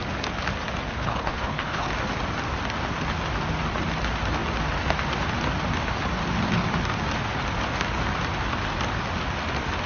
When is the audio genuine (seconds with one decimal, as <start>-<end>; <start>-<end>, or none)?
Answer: 0.0-1.0; 1.9-9.9